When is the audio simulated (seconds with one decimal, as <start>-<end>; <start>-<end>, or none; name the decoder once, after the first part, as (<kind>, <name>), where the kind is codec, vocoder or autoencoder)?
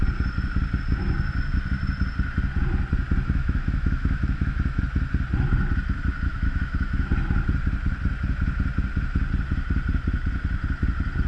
3.4-4.8 (autoencoder, DAC-VAE); 6.3-7.1